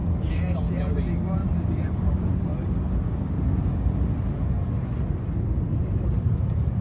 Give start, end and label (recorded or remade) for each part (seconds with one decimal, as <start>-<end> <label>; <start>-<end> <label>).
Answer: 0.0-0.5 remade; 0.5-1.4 recorded; 1.4-3.5 remade; 3.5-5.7 recorded; 5.7-6.8 remade